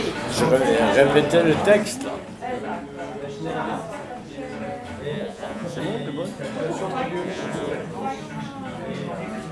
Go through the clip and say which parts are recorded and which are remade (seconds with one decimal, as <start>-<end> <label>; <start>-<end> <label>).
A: 0.0-5.1 recorded; 5.1-5.8 remade; 5.8-7.2 recorded; 7.2-7.7 remade; 7.7-9.5 recorded